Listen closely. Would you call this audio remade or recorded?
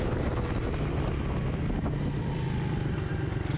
recorded